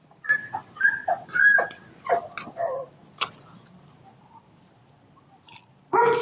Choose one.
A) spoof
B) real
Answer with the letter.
B